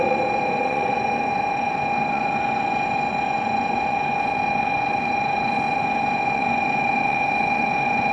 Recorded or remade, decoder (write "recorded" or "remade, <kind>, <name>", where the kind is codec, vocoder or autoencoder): remade, vocoder, Vocos